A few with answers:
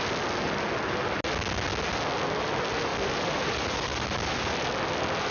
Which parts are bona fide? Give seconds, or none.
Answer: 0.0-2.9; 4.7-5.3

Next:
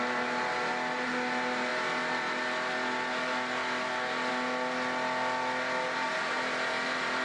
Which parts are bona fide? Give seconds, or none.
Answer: 0.0-7.2